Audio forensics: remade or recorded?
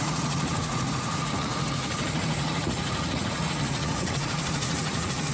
remade